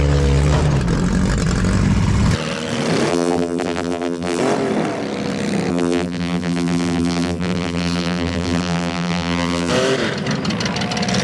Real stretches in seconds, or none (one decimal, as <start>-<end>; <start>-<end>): 0.0-3.1; 4.4-5.7; 9.7-11.2